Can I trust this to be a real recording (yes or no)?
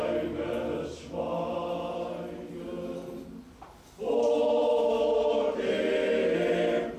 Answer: yes